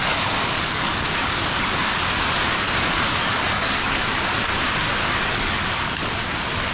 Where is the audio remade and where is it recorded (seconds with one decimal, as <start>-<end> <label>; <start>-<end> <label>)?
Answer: 0.0-4.0 remade; 4.0-5.0 recorded; 5.0-6.1 remade; 6.1-6.7 recorded